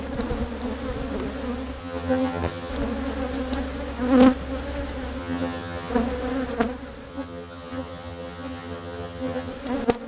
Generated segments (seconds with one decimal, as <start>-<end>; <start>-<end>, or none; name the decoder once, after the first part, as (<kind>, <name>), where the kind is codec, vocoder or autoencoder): 1.8-2.7 (vocoder, HiFi-GAN); 5.2-5.9; 7.1-9.5